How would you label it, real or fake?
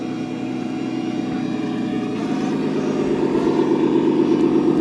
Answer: real